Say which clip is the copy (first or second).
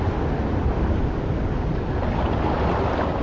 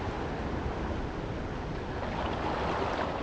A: first